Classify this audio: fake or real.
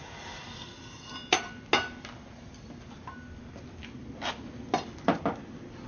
real